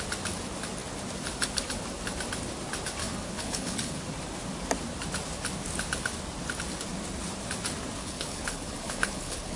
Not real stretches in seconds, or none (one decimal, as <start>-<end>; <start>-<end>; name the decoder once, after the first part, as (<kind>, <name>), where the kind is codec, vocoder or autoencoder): 3.0-4.0 (codec, HILCodec); 8.0-9.6

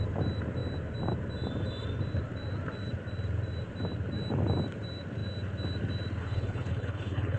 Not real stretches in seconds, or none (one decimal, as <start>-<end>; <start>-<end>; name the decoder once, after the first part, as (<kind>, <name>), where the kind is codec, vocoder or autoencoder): 6.2-7.4 (codec, HILCodec)

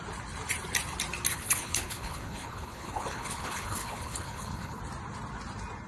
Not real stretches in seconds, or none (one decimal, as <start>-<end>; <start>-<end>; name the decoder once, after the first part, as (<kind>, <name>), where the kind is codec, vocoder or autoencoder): 1.3-4.8 (codec, HILCodec)

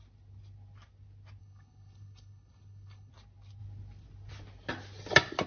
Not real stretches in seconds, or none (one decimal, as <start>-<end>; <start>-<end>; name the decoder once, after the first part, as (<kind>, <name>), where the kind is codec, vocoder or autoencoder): 1.4-3.1 (codec, HILCodec)